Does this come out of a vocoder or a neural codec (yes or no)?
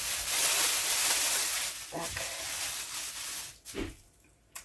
no